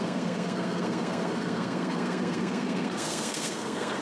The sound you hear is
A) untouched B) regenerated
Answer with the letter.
B